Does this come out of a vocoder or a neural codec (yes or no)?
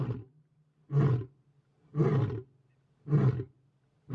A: no